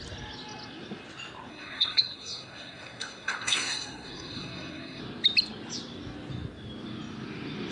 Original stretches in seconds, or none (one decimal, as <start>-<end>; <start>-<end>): 0.0-1.5; 5.0-7.7